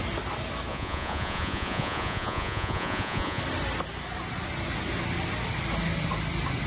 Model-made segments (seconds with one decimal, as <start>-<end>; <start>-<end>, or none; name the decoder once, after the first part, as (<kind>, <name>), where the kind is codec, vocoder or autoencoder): 0.7-3.4 (vocoder, Vocos)